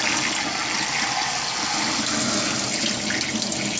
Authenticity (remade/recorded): recorded